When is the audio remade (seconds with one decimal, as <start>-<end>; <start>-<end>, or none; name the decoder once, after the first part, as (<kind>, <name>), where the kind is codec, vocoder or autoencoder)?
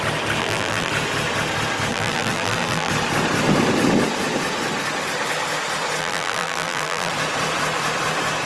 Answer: 0.4-0.9 (vocoder, BigVGAN v2); 1.9-2.9; 6.0-7.1